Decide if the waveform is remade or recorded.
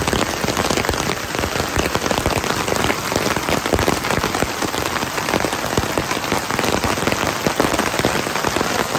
recorded